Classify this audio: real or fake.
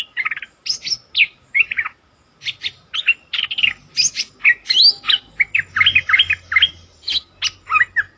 real